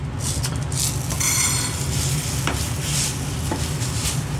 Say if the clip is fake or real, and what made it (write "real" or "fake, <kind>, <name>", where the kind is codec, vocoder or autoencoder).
real